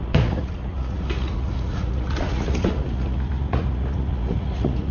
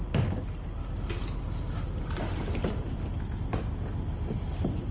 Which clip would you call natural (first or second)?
second